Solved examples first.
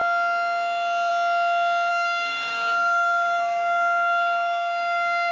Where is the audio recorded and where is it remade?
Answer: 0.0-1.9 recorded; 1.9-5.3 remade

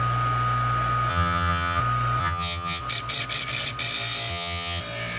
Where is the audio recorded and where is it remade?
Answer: 0.0-1.1 recorded; 1.1-1.8 remade; 1.8-2.2 recorded; 2.2-2.8 remade; 2.8-4.3 recorded; 4.3-4.8 remade; 4.8-5.2 recorded

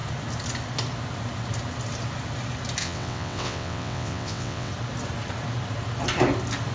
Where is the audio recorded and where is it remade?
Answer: 0.0-2.8 recorded; 2.8-4.7 remade; 4.7-6.7 recorded

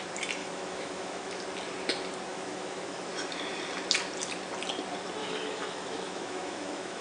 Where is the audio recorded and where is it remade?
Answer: 0.0-0.4 recorded; 0.4-1.4 remade; 1.4-2.3 recorded; 2.3-3.1 remade; 3.1-5.2 recorded; 5.2-7.0 remade